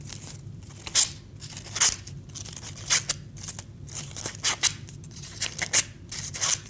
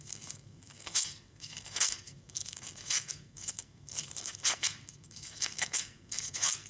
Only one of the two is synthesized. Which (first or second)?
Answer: second